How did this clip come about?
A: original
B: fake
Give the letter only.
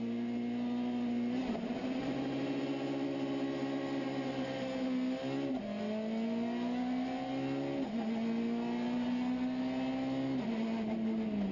A